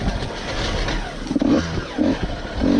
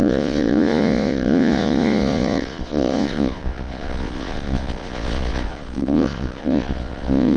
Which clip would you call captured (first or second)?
first